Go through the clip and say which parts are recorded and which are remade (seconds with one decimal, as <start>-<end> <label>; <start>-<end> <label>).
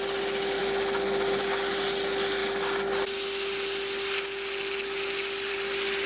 0.0-6.1 recorded